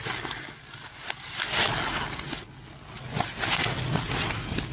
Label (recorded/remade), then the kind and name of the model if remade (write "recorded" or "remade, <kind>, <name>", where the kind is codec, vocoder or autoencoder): recorded